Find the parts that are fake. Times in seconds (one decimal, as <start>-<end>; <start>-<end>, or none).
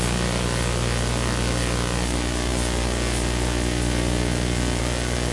none